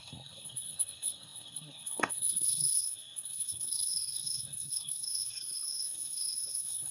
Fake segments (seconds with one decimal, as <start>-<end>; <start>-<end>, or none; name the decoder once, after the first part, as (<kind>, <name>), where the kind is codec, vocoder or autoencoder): 0.0-6.9 (codec, SNAC)